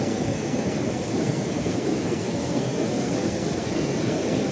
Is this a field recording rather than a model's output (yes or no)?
no